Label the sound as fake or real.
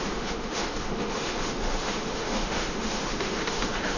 fake